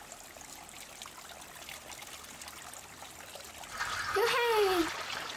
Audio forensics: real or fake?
real